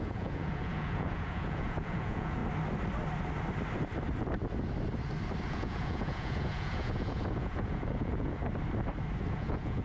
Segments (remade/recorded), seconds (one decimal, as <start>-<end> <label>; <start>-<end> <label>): 0.0-2.4 remade; 2.4-5.5 recorded; 5.5-8.4 remade; 8.4-9.3 recorded; 9.3-9.8 remade